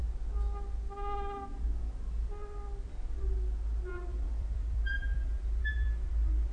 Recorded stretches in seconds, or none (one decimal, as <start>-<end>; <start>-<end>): 0.0-3.9